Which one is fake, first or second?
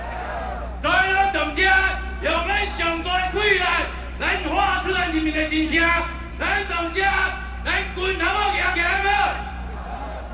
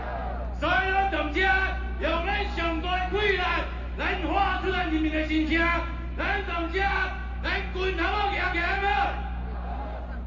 first